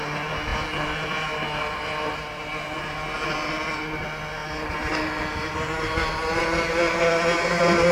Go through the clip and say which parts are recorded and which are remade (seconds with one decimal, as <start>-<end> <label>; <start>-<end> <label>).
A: 0.0-7.9 recorded